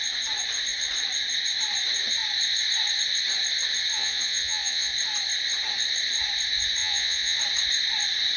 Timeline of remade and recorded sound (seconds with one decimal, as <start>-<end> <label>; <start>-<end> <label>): 0.0-3.9 recorded; 3.9-4.9 remade; 4.9-6.8 recorded; 6.8-7.4 remade; 7.4-8.4 recorded